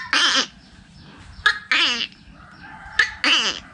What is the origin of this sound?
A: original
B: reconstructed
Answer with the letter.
A